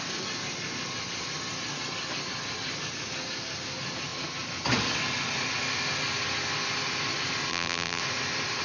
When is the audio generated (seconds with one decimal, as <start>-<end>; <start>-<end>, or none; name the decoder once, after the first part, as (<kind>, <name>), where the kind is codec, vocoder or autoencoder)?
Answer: 7.5-8.0 (vocoder, BigVGAN v2)